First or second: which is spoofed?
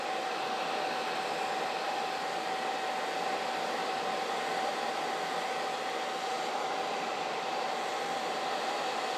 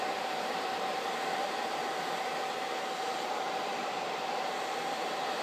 second